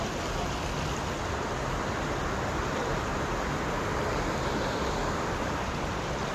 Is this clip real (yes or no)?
yes